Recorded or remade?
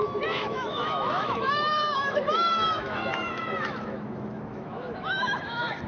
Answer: remade